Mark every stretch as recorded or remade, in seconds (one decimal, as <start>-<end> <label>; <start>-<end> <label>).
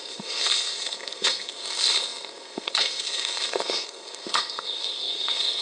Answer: 0.0-5.6 remade